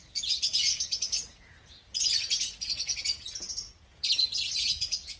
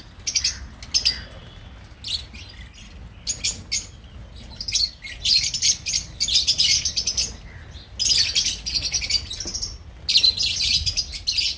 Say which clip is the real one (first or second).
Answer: second